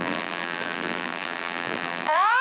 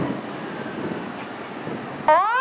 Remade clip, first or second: first